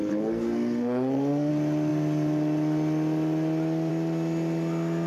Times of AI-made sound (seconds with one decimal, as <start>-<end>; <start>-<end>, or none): 0.0-1.5

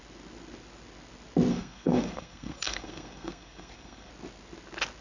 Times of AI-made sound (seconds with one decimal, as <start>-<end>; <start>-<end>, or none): 1.5-4.1

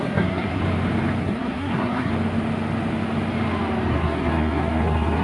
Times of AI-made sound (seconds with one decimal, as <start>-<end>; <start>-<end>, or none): 0.0-0.6; 1.2-2.1; 3.9-5.2

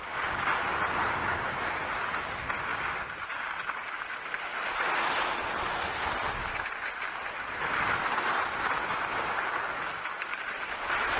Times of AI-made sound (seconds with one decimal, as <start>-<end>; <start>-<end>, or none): none

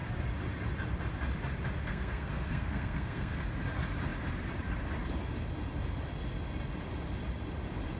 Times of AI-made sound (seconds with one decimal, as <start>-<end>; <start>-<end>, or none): 1.8-3.4

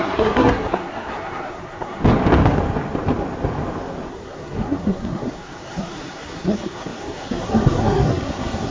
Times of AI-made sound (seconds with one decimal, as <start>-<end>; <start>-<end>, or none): 0.0-2.0; 4.1-8.7

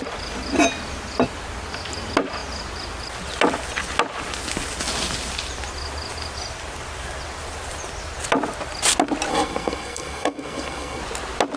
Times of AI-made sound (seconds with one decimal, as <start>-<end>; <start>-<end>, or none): 9.3-11.0